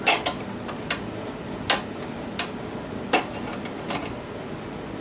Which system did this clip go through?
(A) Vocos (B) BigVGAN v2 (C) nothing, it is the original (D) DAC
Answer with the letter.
C